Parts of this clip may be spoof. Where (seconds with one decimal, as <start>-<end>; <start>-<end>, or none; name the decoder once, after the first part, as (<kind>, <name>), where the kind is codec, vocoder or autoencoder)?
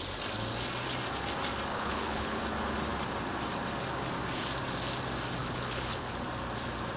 1.7-2.4 (codec, HILCodec); 5.4-6.1